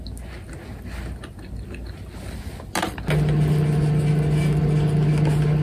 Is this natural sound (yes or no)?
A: yes